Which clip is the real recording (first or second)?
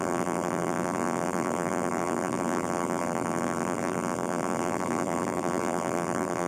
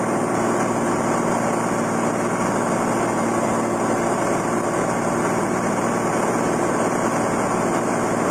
second